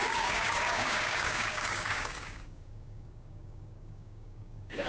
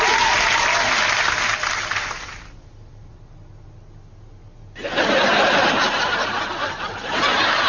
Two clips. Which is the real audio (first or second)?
second